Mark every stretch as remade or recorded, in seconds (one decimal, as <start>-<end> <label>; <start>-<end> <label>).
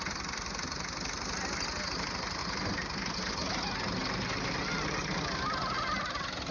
0.0-6.5 recorded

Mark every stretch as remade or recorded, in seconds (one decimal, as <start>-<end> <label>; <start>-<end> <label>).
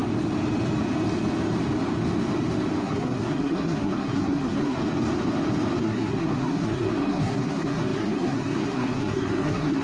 0.0-2.8 recorded; 2.8-4.8 remade; 4.8-5.8 recorded; 5.8-9.8 remade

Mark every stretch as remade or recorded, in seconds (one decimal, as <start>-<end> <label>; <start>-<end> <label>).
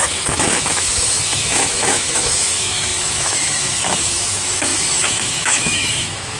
0.0-6.4 remade